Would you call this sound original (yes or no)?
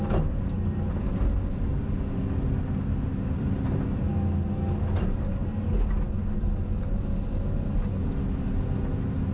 yes